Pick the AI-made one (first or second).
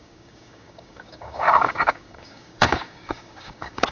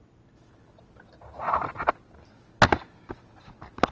first